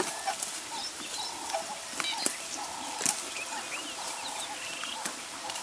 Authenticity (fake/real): real